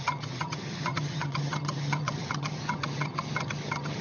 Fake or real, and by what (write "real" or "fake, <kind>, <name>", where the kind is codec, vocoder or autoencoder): fake, vocoder, HiFi-GAN